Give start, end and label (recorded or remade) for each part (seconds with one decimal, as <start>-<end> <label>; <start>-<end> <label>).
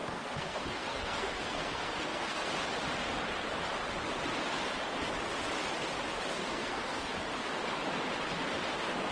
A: 0.0-2.5 remade; 2.5-6.4 recorded; 6.4-7.1 remade; 7.1-9.1 recorded